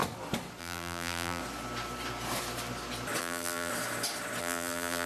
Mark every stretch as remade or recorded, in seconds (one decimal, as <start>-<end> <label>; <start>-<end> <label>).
0.0-0.6 recorded; 0.6-1.4 remade; 1.4-3.2 recorded; 3.2-3.7 remade; 3.7-4.4 recorded; 4.4-5.1 remade